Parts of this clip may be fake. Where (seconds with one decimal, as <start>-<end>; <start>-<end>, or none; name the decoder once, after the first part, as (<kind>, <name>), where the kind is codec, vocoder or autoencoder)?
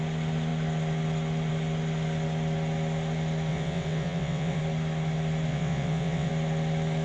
3.5-4.6 (vocoder, WaveNeXt); 5.5-6.3